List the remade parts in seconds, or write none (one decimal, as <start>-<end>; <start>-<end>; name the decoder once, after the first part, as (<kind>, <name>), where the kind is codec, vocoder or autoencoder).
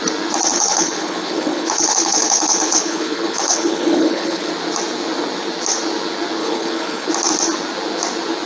0.5-4.5 (codec, HILCodec); 6.4-7.1